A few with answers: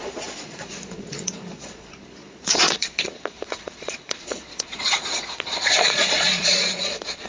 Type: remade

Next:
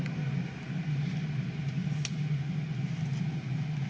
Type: recorded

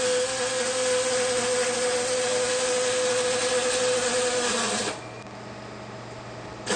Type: recorded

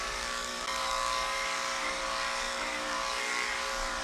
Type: remade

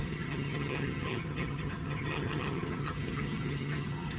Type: remade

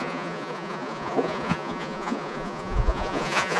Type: remade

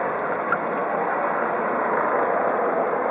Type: recorded